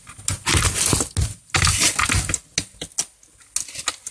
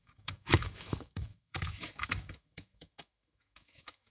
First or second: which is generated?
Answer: second